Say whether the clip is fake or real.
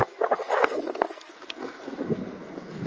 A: fake